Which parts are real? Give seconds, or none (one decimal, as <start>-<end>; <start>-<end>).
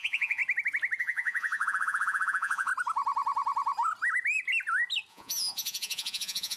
0.4-1.0; 2.7-5.1